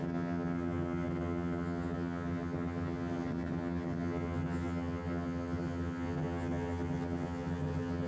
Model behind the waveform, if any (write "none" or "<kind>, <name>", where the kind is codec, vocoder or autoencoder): vocoder, HiFi-GAN